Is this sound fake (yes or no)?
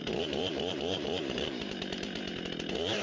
yes